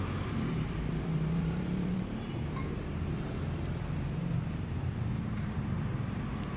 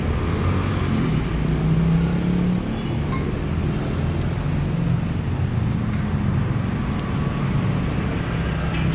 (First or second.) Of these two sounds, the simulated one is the first